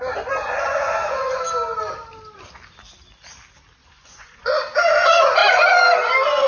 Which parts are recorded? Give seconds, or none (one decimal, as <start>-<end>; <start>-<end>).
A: 0.0-0.4; 1.4-3.8; 4.5-6.5

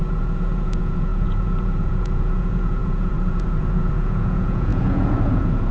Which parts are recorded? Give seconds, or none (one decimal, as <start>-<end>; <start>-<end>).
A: none